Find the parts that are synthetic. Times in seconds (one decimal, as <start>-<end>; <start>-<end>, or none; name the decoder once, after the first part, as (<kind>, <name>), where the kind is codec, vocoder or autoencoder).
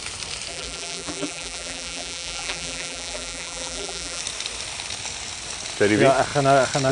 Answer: 0.5-4.2 (vocoder, BigVGAN v2)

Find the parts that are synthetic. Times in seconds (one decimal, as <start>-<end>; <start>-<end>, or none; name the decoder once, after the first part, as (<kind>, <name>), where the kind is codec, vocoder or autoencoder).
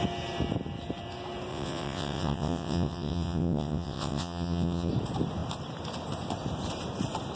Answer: 1.5-4.9 (vocoder, WaveNeXt)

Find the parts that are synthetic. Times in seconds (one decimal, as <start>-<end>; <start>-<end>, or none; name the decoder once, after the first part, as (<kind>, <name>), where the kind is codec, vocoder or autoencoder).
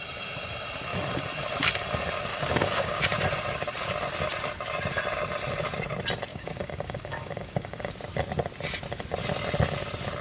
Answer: 2.3-3.0 (codec, DAC); 6.3-7.9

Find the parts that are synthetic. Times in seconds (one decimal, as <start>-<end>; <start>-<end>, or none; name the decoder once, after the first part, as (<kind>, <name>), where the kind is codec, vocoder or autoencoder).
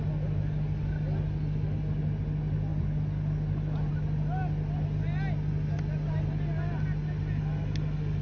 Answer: none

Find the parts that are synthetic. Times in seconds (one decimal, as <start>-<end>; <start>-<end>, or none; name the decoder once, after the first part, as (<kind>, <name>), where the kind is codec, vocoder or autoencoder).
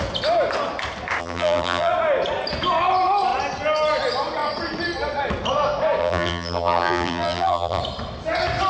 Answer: 1.2-1.9 (vocoder, BigVGAN v2); 6.0-7.8